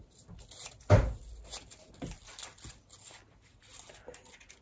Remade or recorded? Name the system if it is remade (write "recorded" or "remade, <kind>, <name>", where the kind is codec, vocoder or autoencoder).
recorded